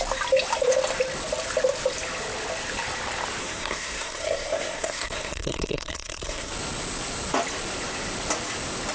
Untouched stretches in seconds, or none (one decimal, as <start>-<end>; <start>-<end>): 0.0-3.4; 6.5-8.9

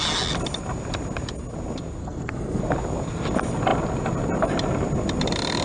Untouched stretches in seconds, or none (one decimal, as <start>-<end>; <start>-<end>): 0.0-2.0; 2.6-5.6

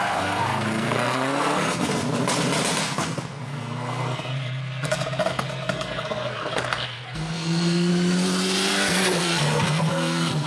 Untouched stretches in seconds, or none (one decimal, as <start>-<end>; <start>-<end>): 2.0-2.8; 7.9-8.7

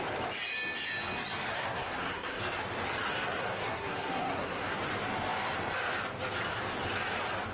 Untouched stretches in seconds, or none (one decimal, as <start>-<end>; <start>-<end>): 0.0-1.5; 2.4-3.1; 4.8-7.5

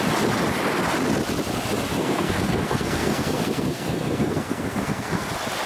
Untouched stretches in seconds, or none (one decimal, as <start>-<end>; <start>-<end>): 0.0-1.9; 5.3-5.7

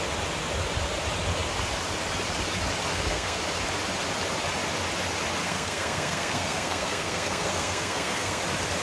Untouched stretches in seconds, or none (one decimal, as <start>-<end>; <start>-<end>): 0.0-2.9; 3.4-5.4; 8.4-8.8

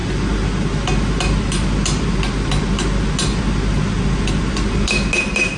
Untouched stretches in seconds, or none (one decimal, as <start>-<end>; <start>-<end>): 0.0-5.6

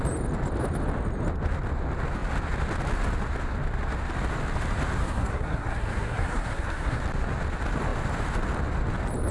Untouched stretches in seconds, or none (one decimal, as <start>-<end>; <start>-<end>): 0.0-5.0; 7.0-9.3